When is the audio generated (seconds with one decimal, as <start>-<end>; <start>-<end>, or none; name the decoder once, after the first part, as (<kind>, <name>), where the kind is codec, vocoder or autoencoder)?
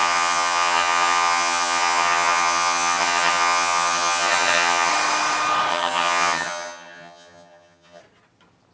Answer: 0.0-4.9 (vocoder, HiFi-GAN); 5.7-8.0